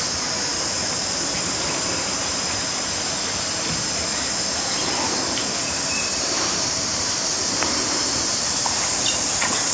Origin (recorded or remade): remade